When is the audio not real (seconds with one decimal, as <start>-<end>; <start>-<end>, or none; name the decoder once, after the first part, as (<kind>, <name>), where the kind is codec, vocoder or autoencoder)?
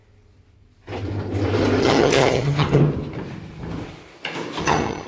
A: 1.8-2.8 (vocoder, HiFi-GAN); 4.6-5.1